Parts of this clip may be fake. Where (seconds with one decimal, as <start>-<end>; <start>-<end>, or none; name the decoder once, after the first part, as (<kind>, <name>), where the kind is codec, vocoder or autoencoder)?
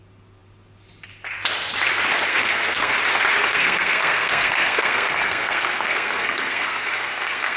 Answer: 2.3-2.9 (codec, SNAC); 3.4-7.6